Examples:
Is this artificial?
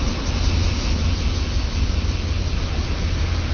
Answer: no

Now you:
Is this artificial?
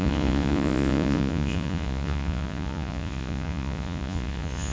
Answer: yes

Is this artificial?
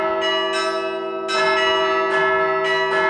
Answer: no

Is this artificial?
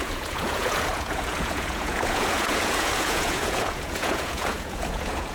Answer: yes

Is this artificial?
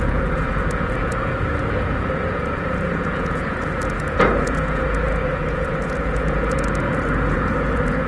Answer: yes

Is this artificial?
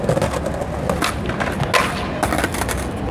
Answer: no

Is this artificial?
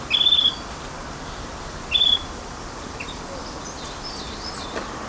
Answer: no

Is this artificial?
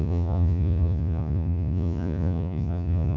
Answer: yes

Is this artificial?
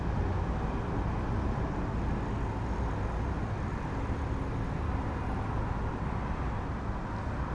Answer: no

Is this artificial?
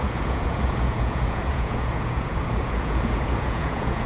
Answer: yes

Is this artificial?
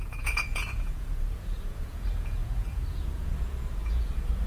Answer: yes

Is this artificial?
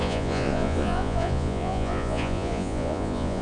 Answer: yes